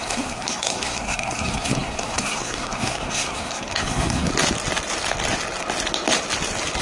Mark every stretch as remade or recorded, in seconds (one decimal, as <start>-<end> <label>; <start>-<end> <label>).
0.0-4.3 remade; 4.3-6.8 recorded